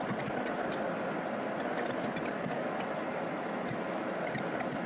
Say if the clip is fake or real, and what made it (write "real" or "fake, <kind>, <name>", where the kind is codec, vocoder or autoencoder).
real